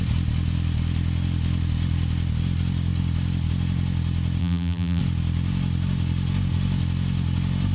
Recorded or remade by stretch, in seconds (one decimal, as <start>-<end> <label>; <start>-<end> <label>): 0.0-4.4 recorded; 4.4-5.0 remade; 5.0-7.7 recorded